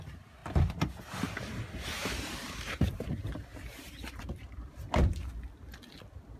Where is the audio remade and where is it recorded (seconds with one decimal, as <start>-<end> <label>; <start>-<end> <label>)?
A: 0.0-2.0 recorded; 2.0-5.3 remade; 5.3-6.4 recorded